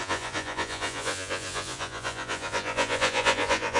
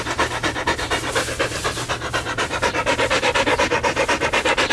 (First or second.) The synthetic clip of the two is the first